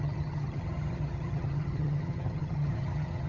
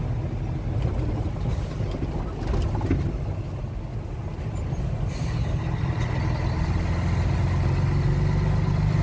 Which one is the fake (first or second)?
first